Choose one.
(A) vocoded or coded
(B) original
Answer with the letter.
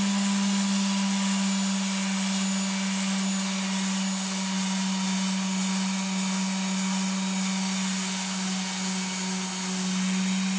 B